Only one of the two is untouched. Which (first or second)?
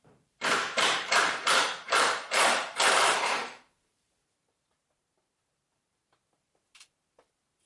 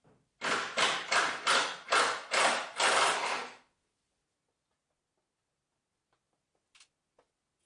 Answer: second